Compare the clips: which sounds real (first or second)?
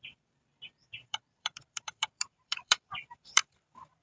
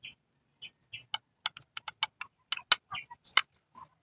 second